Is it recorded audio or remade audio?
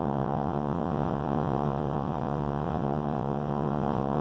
remade